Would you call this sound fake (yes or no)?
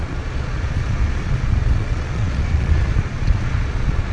yes